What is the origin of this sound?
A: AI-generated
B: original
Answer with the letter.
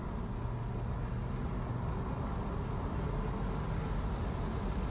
B